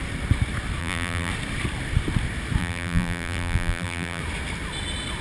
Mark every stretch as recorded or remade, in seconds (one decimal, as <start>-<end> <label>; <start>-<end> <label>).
0.0-0.8 recorded; 0.8-1.3 remade; 1.3-2.6 recorded; 2.6-4.2 remade; 4.2-5.2 recorded